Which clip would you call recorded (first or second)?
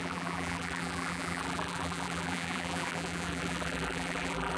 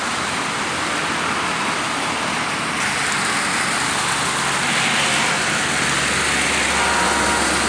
second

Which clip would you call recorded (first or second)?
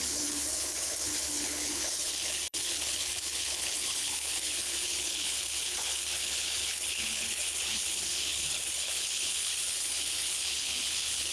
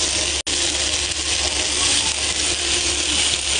second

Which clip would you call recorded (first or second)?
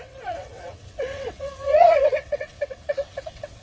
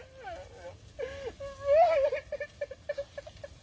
second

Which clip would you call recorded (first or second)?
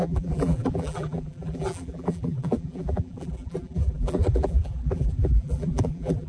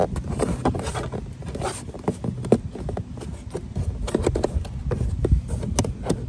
second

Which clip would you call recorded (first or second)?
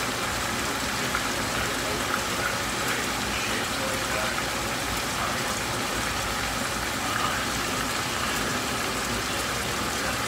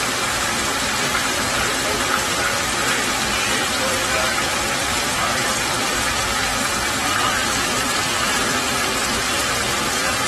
first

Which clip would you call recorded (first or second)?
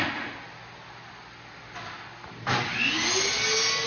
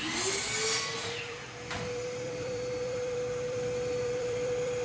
first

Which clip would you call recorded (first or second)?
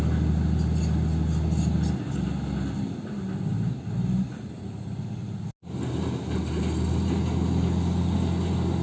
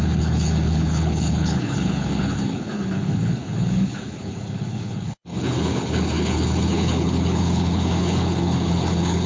first